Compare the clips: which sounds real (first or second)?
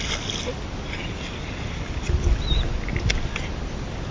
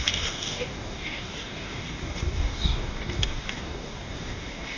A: first